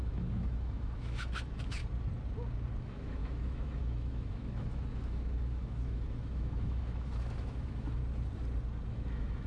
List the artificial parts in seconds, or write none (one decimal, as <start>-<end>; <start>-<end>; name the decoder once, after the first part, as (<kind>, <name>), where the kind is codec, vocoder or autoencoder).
0.0-1.8 (autoencoder, DAC-VAE); 2.8-8.0; 8.9-9.5